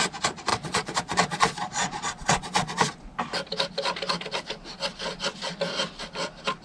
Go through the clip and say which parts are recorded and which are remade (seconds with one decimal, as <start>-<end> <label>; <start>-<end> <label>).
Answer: 0.0-0.5 recorded; 0.5-3.2 remade; 3.2-6.6 recorded